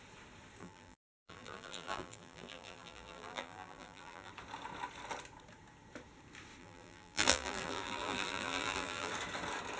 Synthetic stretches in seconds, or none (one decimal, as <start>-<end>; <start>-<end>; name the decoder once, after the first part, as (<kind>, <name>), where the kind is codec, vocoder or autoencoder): 0.6-4.3 (vocoder, BigVGAN v2); 6.6-9.1